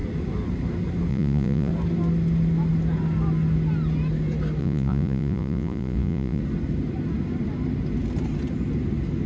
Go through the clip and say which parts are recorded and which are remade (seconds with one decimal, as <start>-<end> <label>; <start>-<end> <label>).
0.0-1.1 recorded; 1.1-1.7 remade; 1.7-4.6 recorded; 4.6-6.4 remade; 6.4-9.3 recorded